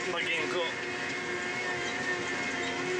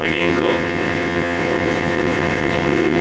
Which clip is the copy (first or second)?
second